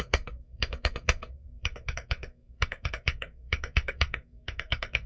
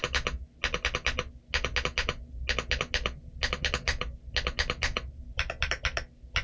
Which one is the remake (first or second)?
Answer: first